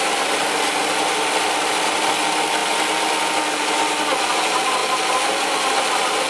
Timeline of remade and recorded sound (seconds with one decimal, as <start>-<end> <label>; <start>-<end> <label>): 0.0-6.3 recorded